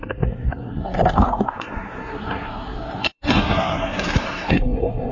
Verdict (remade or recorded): remade